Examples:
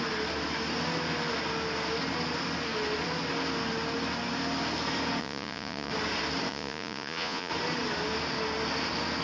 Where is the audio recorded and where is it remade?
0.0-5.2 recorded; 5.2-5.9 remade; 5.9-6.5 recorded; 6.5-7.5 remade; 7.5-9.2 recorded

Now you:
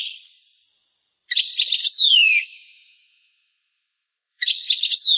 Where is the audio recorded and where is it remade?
0.0-1.8 recorded; 1.8-5.2 remade